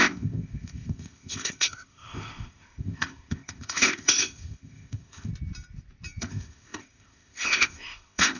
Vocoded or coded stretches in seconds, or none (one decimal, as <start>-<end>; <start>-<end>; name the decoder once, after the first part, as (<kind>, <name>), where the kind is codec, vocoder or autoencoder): 0.0-5.3 (codec, ZipCodec); 6.2-8.4